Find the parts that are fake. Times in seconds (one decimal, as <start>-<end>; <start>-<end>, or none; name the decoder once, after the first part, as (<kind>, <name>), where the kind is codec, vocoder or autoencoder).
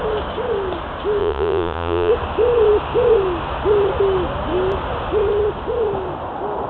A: 1.2-2.1 (vocoder, Vocos)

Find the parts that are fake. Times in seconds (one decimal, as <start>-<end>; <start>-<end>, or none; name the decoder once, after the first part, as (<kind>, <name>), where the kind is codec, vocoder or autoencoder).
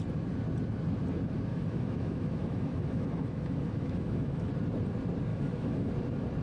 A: 1.5-4.5 (autoencoder, DAC-VAE); 5.3-5.9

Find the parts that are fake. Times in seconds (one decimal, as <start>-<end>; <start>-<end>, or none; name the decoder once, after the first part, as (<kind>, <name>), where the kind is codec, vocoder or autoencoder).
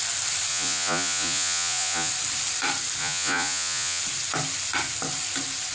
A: 0.5-2.1 (vocoder, Vocos); 3.0-4.0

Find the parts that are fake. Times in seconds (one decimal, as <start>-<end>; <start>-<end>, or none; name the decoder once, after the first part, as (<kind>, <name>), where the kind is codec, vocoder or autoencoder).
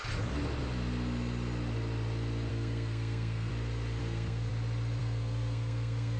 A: 2.5-3.5 (codec, SNAC); 4.0-4.5; 5.0-6.2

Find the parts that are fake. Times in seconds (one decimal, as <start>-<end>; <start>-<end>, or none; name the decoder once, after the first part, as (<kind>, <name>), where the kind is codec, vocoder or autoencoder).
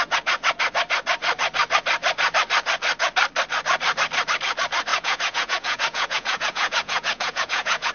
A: 4.9-7.9 (vocoder, Vocos)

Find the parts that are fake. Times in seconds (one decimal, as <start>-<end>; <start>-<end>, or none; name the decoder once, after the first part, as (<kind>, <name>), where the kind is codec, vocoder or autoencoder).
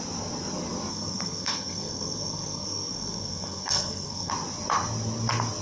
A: 0.9-4.3 (codec, SNAC)